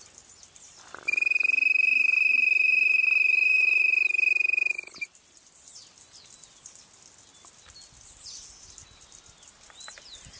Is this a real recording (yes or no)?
yes